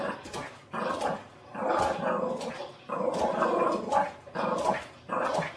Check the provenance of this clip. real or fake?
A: real